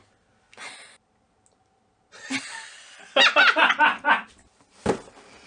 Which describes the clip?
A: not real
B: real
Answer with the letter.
B